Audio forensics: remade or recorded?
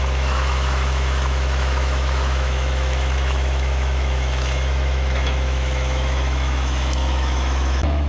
remade